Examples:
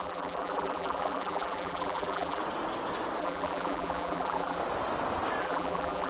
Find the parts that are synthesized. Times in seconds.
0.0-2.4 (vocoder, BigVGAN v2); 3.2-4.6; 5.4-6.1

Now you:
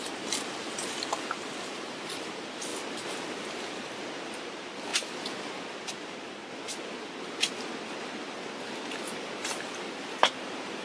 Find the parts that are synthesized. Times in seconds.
0.0-2.7 (vocoder, BigVGAN v2); 4.0-4.9; 5.9-6.4; 10.4-10.8

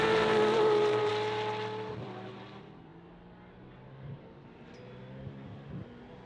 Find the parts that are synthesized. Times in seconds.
0.0-1.1 (vocoder, BigVGAN v2); 1.9-2.9

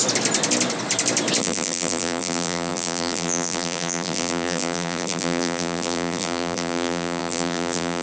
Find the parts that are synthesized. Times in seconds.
1.4-8.0 (vocoder, BigVGAN v2)

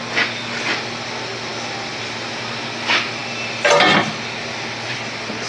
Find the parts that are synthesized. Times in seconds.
none

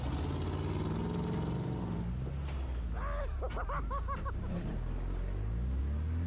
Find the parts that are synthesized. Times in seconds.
4.4-5.8 (vocoder, BigVGAN v2)

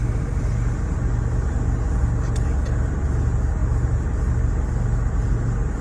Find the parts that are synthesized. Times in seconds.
none